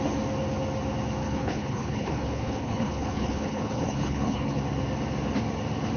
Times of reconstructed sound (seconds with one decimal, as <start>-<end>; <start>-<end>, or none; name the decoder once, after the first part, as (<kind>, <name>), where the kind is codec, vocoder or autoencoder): 1.2-4.6 (codec, HILCodec)

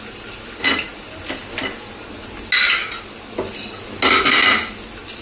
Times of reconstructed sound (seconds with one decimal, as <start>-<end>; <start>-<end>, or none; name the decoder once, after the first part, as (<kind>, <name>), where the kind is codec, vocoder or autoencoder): none

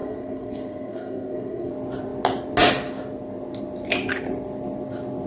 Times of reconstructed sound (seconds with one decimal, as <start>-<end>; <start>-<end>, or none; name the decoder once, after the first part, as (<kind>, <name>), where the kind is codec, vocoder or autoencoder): 0.0-1.7 (codec, SNAC)

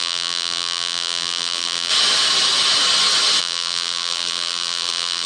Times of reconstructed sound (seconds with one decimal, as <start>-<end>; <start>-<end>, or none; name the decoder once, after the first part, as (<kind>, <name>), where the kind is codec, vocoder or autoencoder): 0.0-1.9 (vocoder, BigVGAN v2); 3.4-5.3